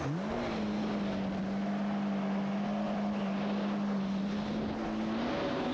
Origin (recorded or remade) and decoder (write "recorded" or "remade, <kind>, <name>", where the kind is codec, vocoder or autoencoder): recorded